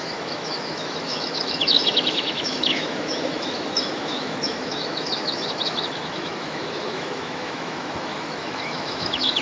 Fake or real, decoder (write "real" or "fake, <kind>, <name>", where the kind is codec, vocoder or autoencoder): fake, autoencoder, DAC-VAE